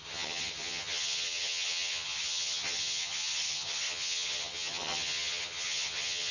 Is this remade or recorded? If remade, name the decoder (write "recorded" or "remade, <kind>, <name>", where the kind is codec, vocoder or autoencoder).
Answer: remade, vocoder, HiFi-GAN